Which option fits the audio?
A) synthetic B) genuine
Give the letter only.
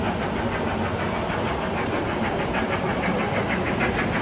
B